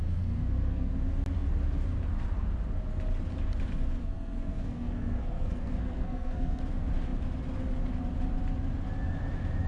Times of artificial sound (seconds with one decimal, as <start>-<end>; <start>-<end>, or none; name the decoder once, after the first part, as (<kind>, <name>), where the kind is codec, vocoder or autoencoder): 0.0-0.9 (codec, SNAC); 4.0-6.6